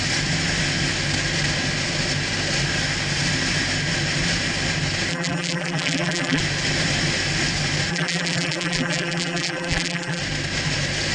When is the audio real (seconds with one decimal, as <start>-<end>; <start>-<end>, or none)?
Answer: 0.0-5.1; 6.4-7.9; 10.2-11.1